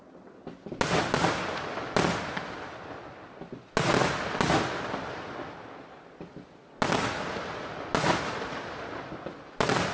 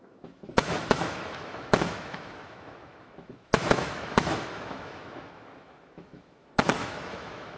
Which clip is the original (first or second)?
first